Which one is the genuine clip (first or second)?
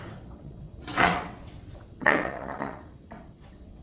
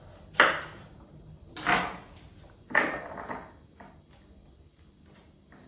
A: second